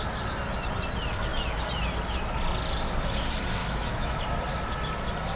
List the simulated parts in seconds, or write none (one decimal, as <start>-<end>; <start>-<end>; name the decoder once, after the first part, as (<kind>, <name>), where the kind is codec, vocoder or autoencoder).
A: 3.6-4.2 (autoencoder, DAC-VAE)